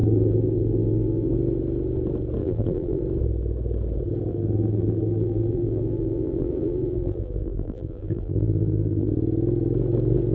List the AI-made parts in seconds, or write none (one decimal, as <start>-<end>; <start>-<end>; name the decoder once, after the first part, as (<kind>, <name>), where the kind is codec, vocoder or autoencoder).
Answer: 0.0-1.3 (vocoder, BigVGAN v2); 2.4-3.0; 4.3-9.1